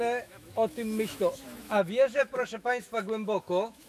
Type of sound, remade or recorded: remade